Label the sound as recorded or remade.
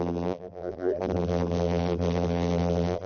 remade